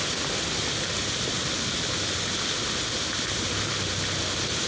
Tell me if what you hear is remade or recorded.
recorded